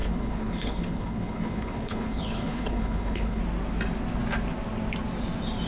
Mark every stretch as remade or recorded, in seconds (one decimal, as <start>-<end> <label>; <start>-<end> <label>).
0.0-3.4 remade; 3.4-5.7 recorded

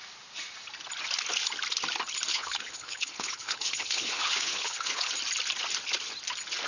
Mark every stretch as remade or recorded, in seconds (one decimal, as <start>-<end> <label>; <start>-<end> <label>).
0.0-2.3 recorded; 2.3-5.1 remade; 5.1-6.7 recorded

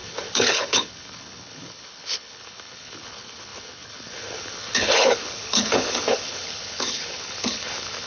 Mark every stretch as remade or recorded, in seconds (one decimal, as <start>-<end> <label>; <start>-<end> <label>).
0.0-8.1 remade

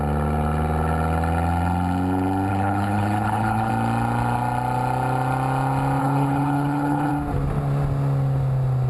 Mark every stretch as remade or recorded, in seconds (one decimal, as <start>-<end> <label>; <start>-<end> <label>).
0.0-2.5 recorded; 2.5-3.7 remade; 3.7-6.0 recorded; 6.0-7.1 remade; 7.1-8.9 recorded

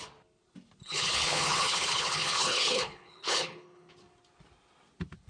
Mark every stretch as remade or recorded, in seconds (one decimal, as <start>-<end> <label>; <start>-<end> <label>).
0.0-0.8 recorded; 0.8-3.9 remade; 3.9-5.3 recorded

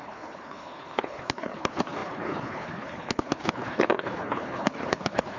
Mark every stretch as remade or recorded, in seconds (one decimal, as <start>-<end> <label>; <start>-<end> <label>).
0.0-5.4 remade